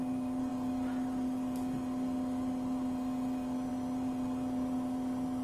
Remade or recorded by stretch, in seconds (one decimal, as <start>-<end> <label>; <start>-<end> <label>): 0.0-5.4 recorded